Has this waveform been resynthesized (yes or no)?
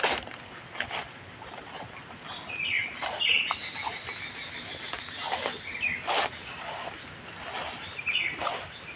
no